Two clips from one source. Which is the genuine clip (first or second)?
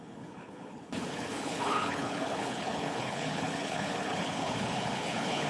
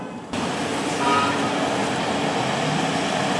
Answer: second